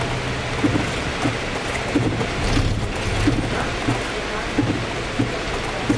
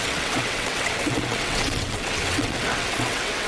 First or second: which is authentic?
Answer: first